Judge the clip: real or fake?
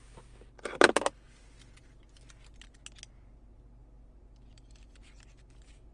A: real